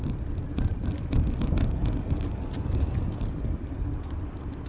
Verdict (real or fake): real